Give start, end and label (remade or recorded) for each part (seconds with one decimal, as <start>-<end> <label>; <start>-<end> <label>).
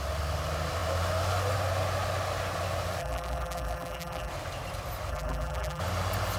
0.0-3.0 recorded; 3.0-4.3 remade; 4.3-5.1 recorded; 5.1-5.8 remade; 5.8-6.4 recorded